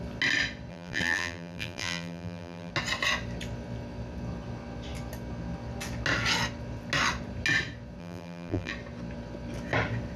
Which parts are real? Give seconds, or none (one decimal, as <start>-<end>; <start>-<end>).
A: 0.0-0.7; 2.7-8.0; 8.7-10.2